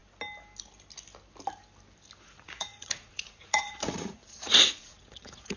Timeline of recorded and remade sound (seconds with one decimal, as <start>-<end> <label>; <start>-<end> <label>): 0.0-2.2 recorded; 2.2-5.6 remade